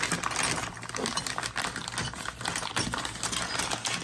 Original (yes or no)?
yes